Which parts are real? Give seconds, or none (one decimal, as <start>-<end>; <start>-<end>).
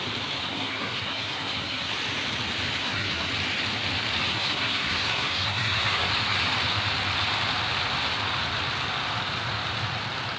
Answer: 0.0-0.4; 1.9-2.8; 3.3-4.3; 6.1-10.4